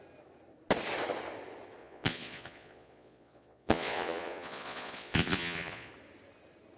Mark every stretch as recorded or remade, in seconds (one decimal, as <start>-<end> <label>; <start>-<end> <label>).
0.0-1.8 recorded; 1.8-5.9 remade; 5.9-6.8 recorded